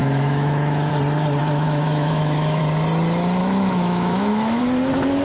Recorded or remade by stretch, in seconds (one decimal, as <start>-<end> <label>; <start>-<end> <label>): 0.0-0.9 remade; 0.9-1.4 recorded; 1.4-2.6 remade; 2.6-3.4 recorded; 3.4-4.6 remade; 4.6-5.2 recorded